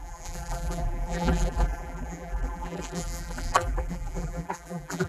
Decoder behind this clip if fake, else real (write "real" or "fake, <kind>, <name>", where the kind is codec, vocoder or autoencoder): fake, vocoder, BigVGAN v2